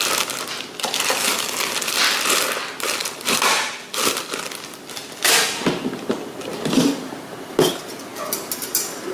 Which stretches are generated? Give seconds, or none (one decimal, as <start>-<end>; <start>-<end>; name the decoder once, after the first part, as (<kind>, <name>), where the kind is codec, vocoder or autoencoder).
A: 3.0-4.0 (vocoder, BigVGAN v2)